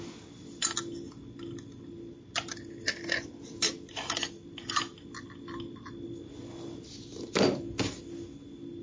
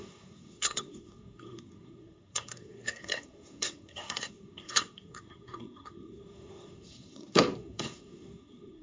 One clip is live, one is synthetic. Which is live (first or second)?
first